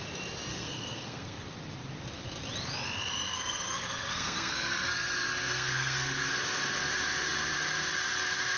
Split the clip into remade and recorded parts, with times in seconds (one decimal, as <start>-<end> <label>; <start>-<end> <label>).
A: 0.0-0.5 recorded; 0.5-1.4 remade; 1.4-3.3 recorded; 3.3-6.3 remade; 6.3-8.6 recorded

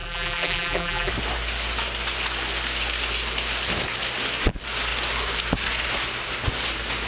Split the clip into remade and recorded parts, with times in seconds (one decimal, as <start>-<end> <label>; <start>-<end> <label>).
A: 0.0-1.1 remade; 1.1-7.1 recorded

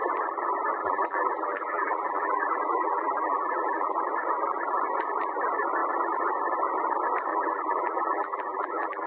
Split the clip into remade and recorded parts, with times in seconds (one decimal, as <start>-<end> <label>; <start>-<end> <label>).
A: 0.0-0.8 recorded; 0.8-4.0 remade; 4.0-7.3 recorded; 7.3-9.1 remade

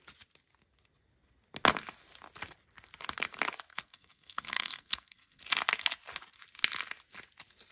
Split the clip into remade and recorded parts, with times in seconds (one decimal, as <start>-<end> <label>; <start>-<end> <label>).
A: 0.0-3.7 recorded; 3.7-5.4 remade; 5.4-7.7 recorded

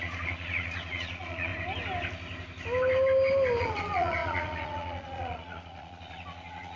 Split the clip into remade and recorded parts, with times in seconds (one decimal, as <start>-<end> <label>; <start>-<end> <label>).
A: 0.0-1.5 remade; 1.5-3.6 recorded; 3.6-6.8 remade